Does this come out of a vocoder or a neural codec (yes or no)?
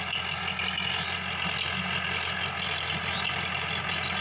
no